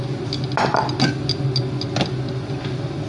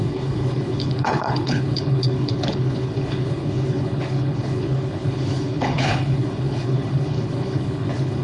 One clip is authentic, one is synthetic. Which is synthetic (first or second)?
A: second